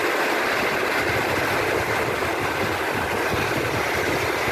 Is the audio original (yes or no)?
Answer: yes